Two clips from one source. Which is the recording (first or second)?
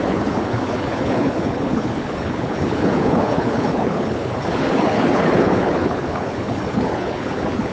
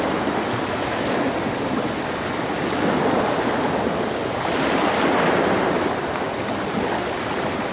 second